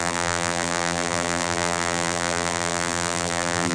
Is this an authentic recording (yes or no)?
no